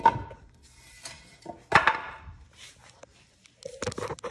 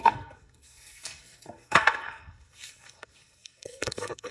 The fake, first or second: second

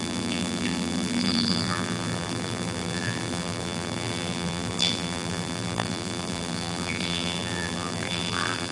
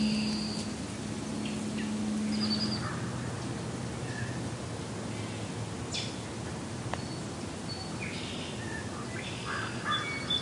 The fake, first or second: first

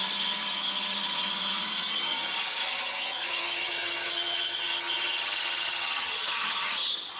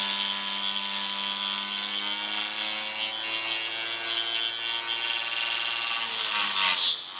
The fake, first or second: first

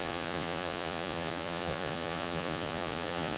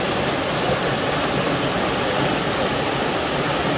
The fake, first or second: first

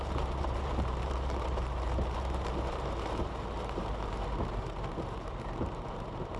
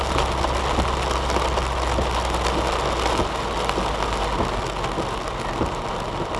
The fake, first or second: first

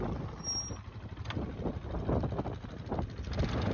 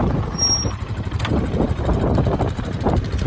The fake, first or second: second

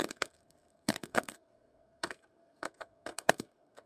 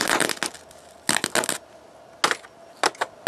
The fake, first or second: first